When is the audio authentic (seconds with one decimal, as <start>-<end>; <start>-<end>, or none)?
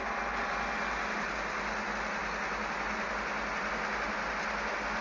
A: 0.0-5.0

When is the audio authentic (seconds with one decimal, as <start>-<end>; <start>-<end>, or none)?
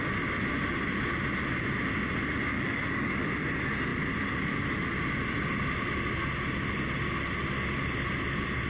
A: 0.0-2.5; 3.3-8.7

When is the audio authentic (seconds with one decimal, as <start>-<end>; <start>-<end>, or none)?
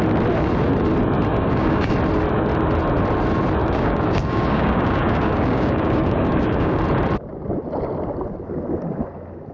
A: 0.0-1.3; 1.9-3.6; 6.8-9.5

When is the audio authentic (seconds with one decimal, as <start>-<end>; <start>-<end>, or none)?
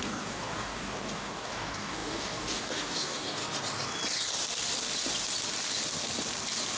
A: 3.4-6.8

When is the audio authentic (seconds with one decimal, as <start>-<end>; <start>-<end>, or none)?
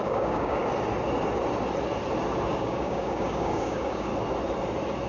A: 0.6-2.5; 4.1-5.1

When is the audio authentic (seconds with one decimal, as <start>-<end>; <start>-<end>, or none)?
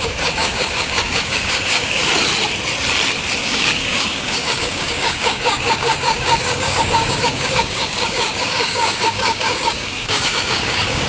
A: 2.0-3.4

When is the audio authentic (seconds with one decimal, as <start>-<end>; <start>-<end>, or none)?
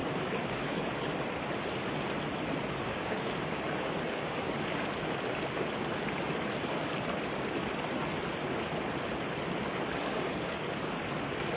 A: 1.2-2.9; 4.5-10.1; 11.0-11.6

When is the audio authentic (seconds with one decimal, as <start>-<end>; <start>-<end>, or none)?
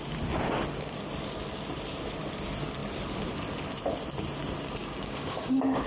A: 0.0-4.8